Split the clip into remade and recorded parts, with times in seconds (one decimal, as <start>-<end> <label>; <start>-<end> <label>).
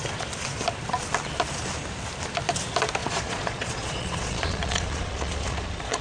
0.0-3.0 recorded; 3.0-6.0 remade